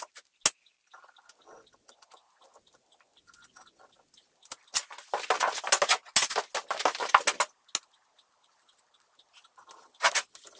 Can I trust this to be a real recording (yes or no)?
yes